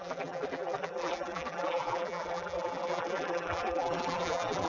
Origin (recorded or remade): remade